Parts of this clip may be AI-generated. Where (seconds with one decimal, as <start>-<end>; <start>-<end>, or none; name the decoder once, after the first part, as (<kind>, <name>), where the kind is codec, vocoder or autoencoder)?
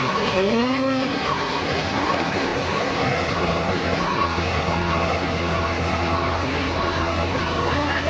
0.0-8.1 (codec, SNAC)